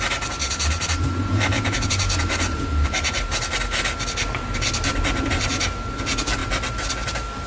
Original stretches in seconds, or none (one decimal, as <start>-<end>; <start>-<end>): 0.0-0.4; 3.5-7.5